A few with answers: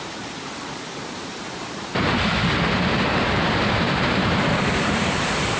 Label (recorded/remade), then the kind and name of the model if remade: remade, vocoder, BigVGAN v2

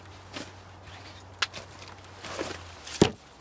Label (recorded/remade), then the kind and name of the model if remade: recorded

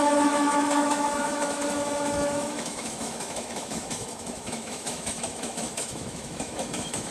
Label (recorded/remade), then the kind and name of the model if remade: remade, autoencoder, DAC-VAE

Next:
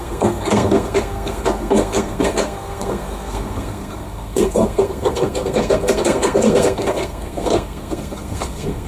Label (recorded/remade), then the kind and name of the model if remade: remade, codec, SNAC